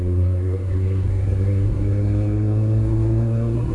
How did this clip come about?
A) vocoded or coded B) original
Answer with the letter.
A